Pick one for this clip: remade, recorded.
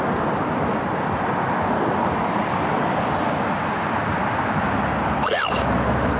recorded